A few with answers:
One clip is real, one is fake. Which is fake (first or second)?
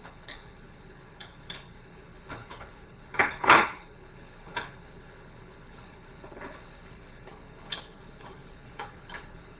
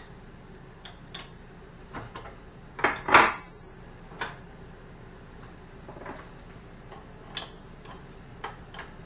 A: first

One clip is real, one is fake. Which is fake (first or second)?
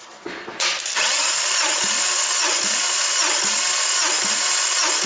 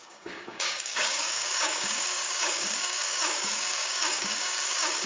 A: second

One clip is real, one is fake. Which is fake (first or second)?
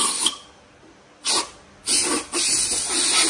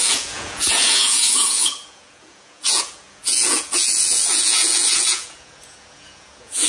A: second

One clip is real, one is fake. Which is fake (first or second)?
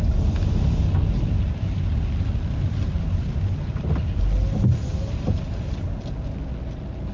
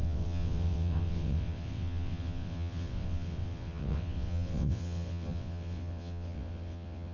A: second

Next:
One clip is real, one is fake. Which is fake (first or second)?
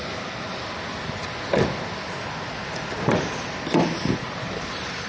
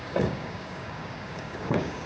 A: second